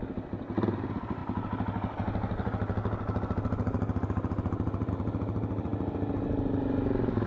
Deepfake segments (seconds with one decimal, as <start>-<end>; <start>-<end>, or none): none